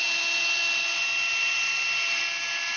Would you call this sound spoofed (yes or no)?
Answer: no